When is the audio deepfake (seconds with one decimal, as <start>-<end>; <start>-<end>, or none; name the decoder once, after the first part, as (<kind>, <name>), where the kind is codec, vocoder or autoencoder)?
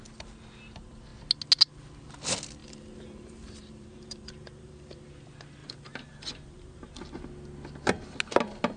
2.6-5.1 (vocoder, BigVGAN v2); 5.6-6.9